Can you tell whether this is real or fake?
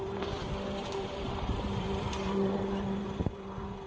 fake